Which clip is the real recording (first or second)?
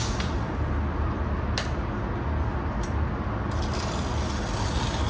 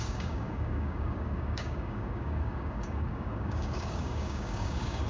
first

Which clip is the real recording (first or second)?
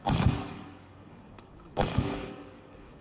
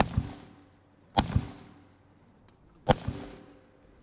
second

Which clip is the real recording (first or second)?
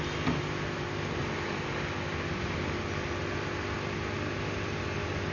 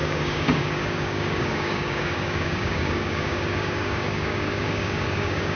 first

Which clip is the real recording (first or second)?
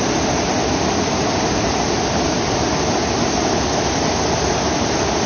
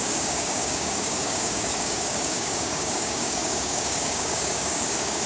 first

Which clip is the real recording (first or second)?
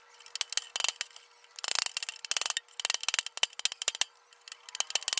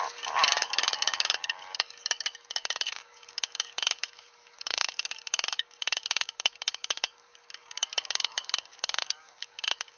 first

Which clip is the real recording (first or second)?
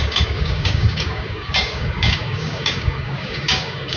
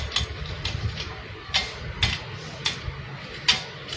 second